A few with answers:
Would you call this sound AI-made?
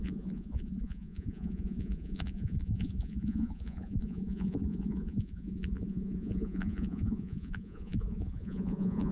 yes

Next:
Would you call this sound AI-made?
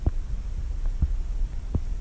no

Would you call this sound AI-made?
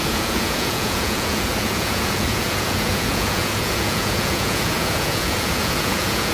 yes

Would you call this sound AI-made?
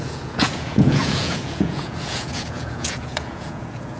yes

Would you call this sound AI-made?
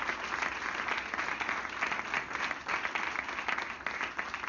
no